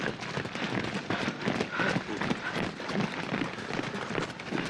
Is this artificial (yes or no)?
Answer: no